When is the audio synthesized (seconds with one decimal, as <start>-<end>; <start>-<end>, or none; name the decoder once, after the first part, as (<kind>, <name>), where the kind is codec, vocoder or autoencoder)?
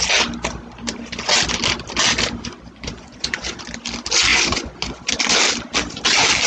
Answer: 2.5-3.6 (vocoder, Vocos); 4.3-5.1